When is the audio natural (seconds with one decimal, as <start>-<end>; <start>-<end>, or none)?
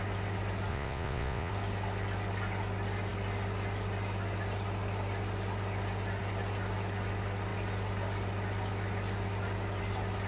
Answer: 0.0-0.7; 1.5-10.3